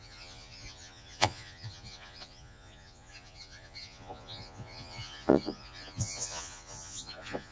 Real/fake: fake